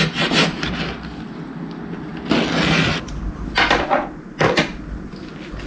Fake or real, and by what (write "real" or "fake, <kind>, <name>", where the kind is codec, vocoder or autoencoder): real